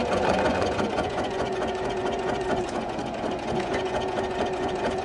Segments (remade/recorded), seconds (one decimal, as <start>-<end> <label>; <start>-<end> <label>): 0.0-5.0 remade

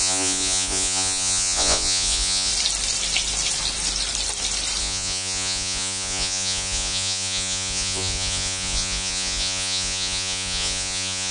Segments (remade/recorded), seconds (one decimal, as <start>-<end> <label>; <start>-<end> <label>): 0.0-2.5 remade; 2.5-4.8 recorded; 4.8-11.3 remade

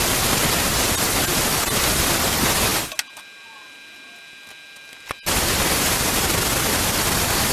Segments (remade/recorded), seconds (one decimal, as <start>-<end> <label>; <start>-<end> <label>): 0.0-7.5 recorded

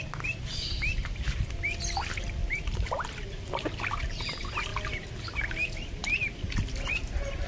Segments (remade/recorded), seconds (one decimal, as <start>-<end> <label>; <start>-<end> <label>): 0.0-1.0 recorded; 1.0-1.8 remade; 1.8-2.4 recorded; 2.4-3.1 remade; 3.1-4.7 recorded; 4.7-5.4 remade; 5.4-7.5 recorded

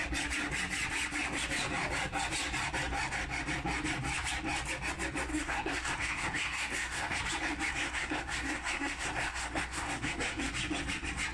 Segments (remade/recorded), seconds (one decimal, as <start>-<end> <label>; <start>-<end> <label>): 0.0-5.3 recorded; 5.3-7.2 remade; 7.2-7.7 recorded; 7.7-10.5 remade; 10.5-11.3 recorded